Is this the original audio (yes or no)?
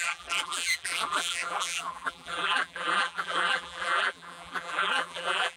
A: no